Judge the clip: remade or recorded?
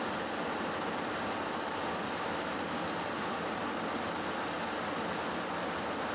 recorded